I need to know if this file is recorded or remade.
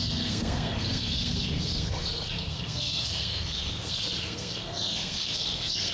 remade